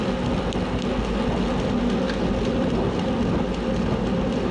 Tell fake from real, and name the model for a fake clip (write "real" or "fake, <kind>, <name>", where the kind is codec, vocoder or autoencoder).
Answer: real